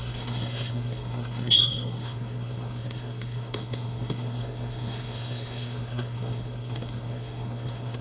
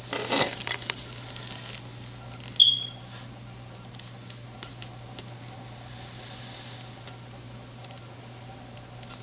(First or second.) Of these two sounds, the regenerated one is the first